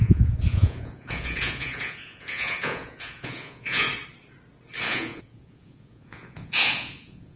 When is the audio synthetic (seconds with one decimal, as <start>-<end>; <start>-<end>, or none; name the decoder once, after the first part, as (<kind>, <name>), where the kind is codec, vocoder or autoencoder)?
0.0-3.9 (vocoder, Vocos); 4.8-7.4